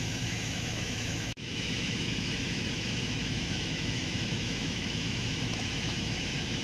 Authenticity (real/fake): fake